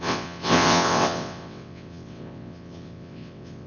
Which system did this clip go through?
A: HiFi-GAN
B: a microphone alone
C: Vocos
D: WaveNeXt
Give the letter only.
D